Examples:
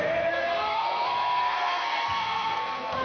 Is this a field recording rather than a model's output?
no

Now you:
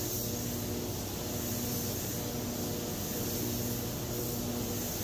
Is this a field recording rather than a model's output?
yes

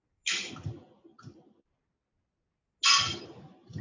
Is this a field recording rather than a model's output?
yes